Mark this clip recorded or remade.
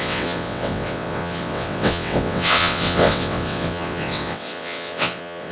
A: remade